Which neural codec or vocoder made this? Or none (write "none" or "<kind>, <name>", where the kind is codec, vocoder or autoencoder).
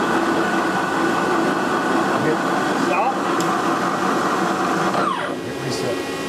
none